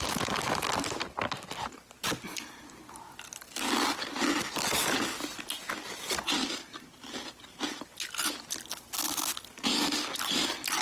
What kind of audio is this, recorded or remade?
recorded